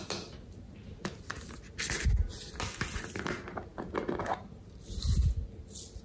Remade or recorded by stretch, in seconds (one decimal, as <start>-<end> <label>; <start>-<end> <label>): 0.0-6.0 recorded